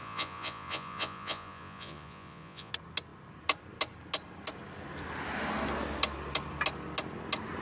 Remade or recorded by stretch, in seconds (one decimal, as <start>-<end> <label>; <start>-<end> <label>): 0.0-2.7 remade; 2.7-7.6 recorded

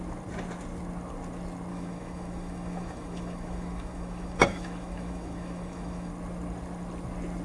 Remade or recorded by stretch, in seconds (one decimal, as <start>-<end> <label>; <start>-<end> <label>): 0.0-1.7 recorded; 1.7-6.1 remade; 6.1-7.4 recorded